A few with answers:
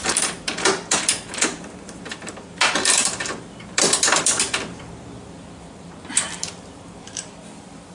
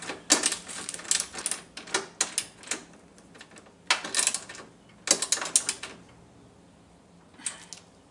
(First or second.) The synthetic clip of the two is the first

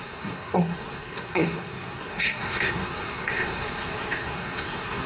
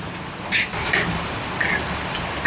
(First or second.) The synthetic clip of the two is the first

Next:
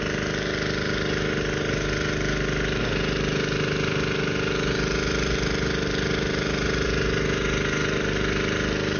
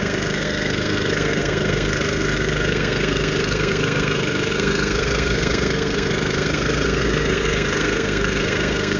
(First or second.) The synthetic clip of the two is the second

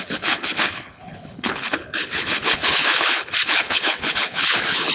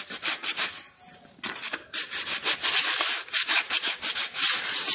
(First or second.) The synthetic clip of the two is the first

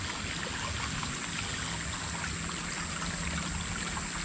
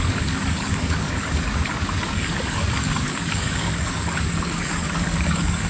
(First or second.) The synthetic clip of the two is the second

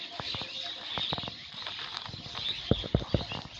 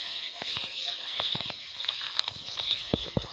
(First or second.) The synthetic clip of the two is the second